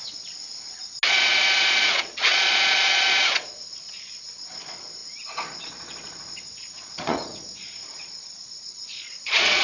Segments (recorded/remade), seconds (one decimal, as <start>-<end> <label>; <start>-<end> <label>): 0.0-0.4 remade; 0.4-1.1 recorded; 1.1-9.6 remade